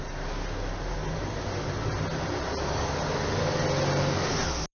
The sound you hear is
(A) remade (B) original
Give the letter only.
B